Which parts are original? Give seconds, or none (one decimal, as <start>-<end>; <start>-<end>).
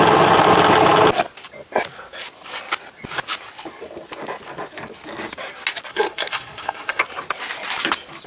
0.0-5.9; 7.0-8.3